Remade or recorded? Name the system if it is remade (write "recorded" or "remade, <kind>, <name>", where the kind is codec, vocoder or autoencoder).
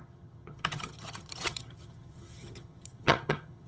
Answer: remade, vocoder, HiFi-GAN